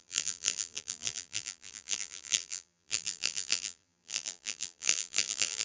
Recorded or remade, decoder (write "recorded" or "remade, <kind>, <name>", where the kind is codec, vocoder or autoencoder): remade, vocoder, BigVGAN v2